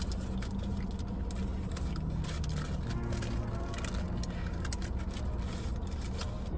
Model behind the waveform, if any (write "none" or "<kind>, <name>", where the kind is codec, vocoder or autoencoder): none